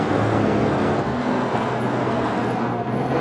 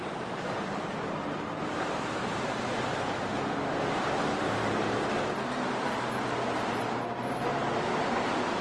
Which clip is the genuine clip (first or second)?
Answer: second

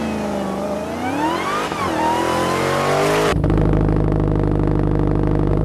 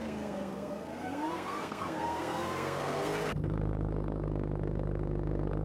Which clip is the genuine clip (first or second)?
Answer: first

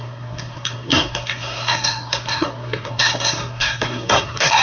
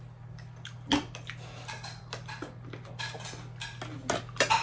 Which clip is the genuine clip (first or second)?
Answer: second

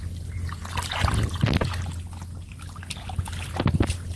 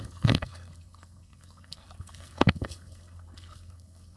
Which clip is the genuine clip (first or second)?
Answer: first